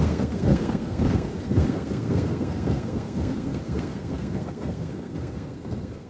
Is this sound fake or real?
fake